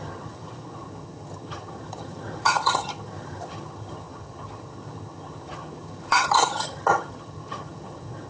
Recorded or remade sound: remade